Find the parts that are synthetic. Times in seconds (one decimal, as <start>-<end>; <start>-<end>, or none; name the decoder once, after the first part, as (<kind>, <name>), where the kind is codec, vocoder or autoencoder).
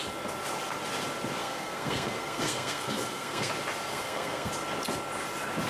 1.4-3.5 (codec, SNAC); 3.9-4.5